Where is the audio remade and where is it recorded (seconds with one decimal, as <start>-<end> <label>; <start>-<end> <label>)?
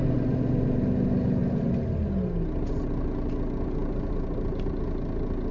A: 0.0-5.5 recorded